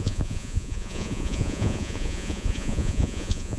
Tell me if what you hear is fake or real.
fake